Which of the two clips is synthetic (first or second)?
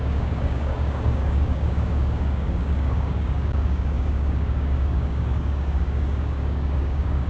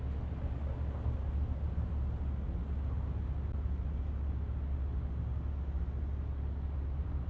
first